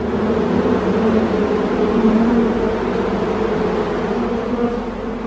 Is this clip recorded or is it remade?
recorded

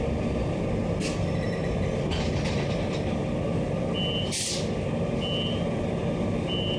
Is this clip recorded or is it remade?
recorded